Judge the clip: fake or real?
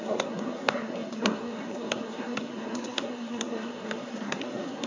fake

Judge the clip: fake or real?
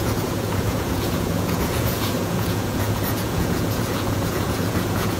fake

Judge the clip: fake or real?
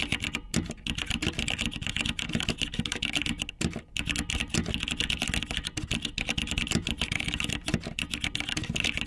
real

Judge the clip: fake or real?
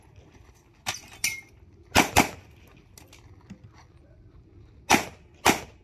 real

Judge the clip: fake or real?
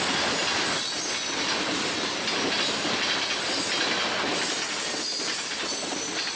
real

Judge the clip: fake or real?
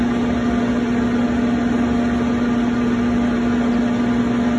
real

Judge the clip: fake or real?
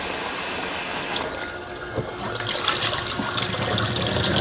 real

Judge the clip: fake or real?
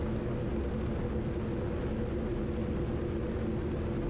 real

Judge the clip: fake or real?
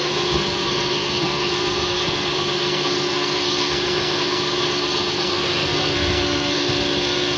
fake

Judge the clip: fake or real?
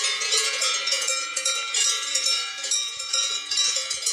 fake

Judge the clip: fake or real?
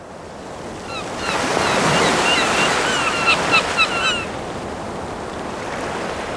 real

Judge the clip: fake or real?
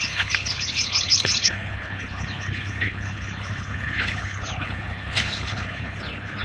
fake